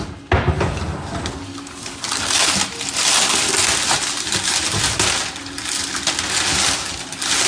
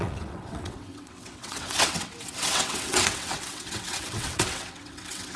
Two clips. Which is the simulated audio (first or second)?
second